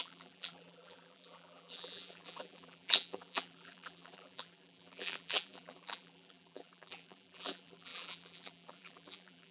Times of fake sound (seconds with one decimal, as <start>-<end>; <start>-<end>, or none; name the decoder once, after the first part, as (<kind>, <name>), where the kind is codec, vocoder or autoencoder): 0.0-9.5 (vocoder, BigVGAN v2)